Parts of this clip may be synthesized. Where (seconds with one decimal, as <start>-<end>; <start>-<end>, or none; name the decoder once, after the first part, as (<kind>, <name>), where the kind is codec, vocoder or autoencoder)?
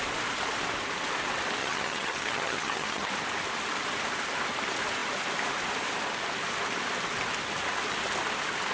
1.6-3.1 (vocoder, HiFi-GAN)